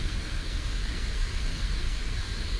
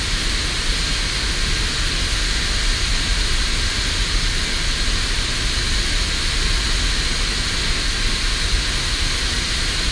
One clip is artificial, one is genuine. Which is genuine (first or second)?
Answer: second